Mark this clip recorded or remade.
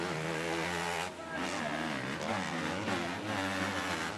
recorded